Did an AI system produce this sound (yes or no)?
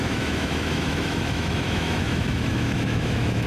yes